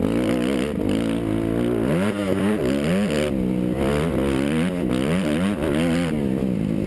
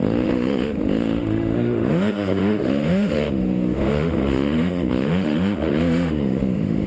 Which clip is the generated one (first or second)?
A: second